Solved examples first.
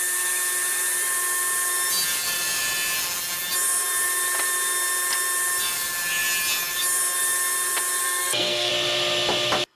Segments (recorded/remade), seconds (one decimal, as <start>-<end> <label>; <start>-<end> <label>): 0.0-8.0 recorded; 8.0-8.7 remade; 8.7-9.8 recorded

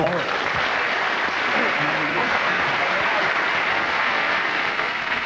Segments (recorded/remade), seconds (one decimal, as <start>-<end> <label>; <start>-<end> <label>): 0.0-2.1 recorded; 2.1-2.6 remade; 2.6-3.7 recorded; 3.7-5.3 remade

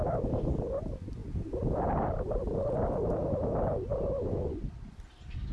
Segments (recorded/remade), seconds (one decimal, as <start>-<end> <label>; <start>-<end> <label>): 0.0-5.5 recorded

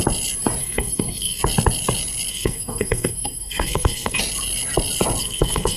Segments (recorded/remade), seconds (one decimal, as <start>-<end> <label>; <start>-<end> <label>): 0.0-0.6 recorded; 0.6-1.4 remade; 1.4-2.3 recorded; 2.3-4.2 remade; 4.2-5.2 recorded; 5.2-5.8 remade

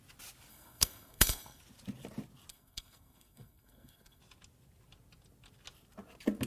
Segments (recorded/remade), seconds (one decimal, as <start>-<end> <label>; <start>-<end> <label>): 0.0-0.5 recorded; 0.5-1.6 remade; 1.6-2.5 recorded; 2.5-4.2 remade; 4.2-6.5 recorded